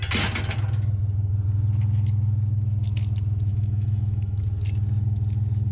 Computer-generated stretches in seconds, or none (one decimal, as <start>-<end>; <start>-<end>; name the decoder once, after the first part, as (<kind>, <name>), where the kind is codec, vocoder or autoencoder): 3.5-4.4 (autoencoder, DAC-VAE)